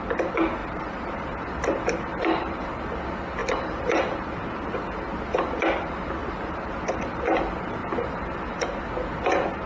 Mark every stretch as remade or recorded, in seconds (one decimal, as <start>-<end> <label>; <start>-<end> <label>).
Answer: 0.0-0.6 recorded; 0.6-2.9 remade; 2.9-3.4 recorded; 3.4-4.3 remade; 4.3-6.2 recorded; 6.2-6.7 remade; 6.7-9.7 recorded